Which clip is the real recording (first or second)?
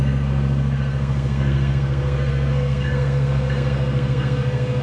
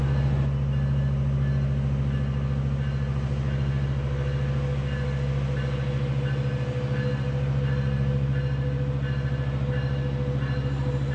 second